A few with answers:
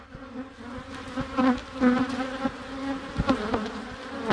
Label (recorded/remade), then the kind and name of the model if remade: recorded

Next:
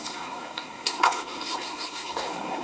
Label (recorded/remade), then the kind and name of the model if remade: remade, codec, SNAC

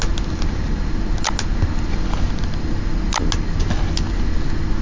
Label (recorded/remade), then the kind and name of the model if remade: recorded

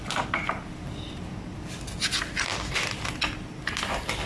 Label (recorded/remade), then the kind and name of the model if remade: recorded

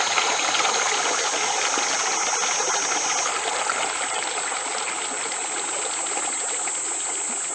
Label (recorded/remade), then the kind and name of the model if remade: recorded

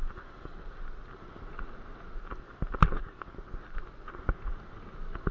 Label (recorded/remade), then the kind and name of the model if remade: recorded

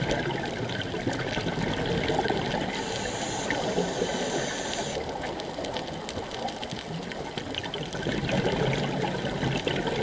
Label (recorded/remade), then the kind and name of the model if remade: recorded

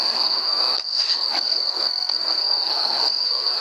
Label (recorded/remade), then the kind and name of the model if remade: remade, codec, SNAC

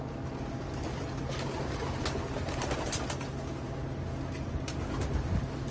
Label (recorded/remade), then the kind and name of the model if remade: recorded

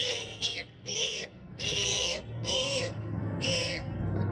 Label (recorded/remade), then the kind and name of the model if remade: remade, codec, SNAC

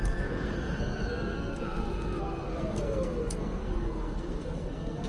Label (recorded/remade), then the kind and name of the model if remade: remade, codec, SNAC